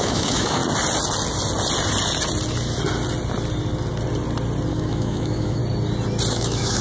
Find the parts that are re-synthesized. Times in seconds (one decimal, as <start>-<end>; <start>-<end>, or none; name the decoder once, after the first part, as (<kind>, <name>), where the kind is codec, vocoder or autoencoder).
0.0-0.6 (autoencoder, DAC-VAE); 4.7-5.6; 6.3-6.8